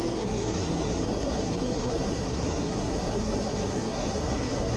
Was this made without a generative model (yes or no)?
no